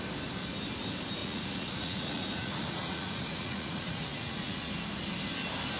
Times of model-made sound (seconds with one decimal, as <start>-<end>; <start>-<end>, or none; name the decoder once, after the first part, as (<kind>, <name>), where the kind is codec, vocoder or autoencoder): 1.2-4.7 (vocoder, Vocos)